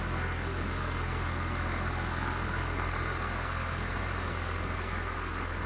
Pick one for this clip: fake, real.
fake